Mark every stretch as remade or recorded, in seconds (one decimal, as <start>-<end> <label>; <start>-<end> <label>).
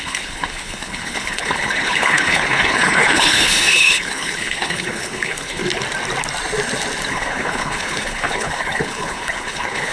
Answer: 0.0-5.6 remade; 5.6-7.1 recorded; 7.1-9.9 remade